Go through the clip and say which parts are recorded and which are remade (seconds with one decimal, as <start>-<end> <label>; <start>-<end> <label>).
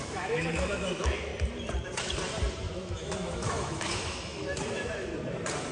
0.0-1.3 remade; 1.3-2.8 recorded; 2.8-5.1 remade; 5.1-5.7 recorded